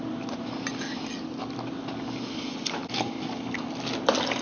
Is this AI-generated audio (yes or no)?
no